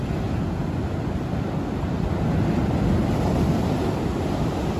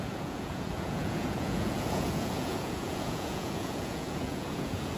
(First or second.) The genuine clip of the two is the first